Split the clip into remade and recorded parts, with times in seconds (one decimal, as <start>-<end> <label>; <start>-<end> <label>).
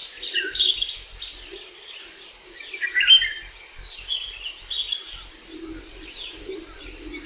0.0-7.3 recorded